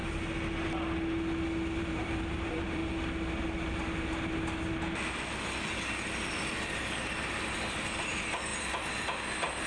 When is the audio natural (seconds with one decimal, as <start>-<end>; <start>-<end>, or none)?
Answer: 0.0-1.8; 2.8-6.7; 8.5-9.7